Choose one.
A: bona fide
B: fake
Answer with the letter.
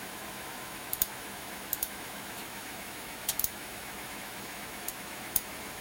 B